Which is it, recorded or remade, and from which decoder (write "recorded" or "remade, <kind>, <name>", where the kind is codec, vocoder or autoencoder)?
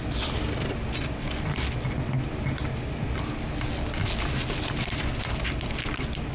recorded